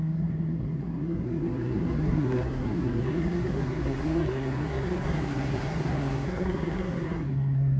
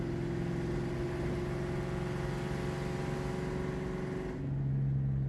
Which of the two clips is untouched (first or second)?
second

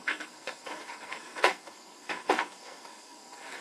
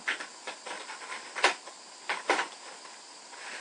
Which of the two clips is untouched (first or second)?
second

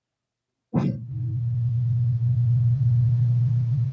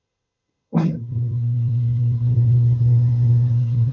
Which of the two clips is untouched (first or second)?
first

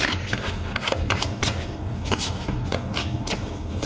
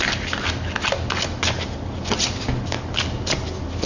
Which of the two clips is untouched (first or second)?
second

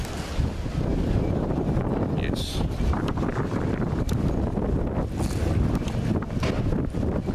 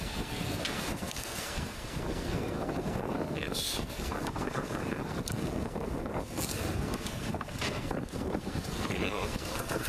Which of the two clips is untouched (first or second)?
first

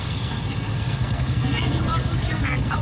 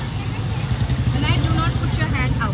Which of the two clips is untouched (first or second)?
second